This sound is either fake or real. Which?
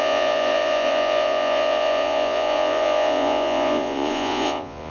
fake